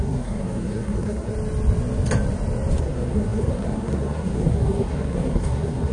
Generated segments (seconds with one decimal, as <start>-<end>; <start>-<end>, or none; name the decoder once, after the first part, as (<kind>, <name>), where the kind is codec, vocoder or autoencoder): 0.0-1.3 (codec, SNAC); 2.8-5.9